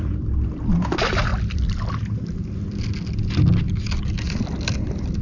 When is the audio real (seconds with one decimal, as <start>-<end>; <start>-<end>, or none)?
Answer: 1.3-4.4